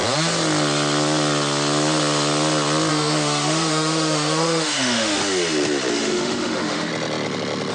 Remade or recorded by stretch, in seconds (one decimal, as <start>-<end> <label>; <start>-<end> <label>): 0.0-2.9 recorded; 2.9-5.2 remade; 5.2-5.9 recorded; 5.9-6.9 remade; 6.9-7.7 recorded